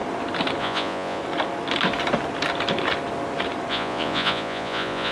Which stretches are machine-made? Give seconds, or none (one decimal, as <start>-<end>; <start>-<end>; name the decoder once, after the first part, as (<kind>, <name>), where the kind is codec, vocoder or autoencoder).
0.6-1.2 (vocoder, Vocos); 3.7-5.1